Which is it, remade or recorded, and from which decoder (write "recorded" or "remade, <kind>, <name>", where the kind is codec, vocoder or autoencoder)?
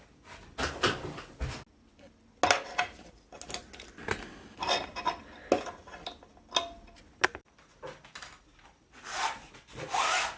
recorded